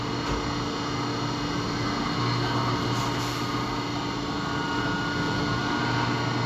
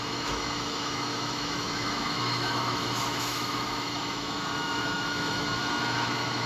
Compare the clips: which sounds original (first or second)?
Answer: first